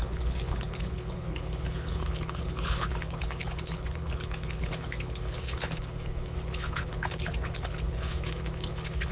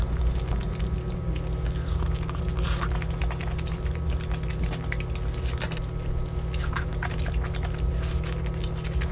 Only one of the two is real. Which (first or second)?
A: second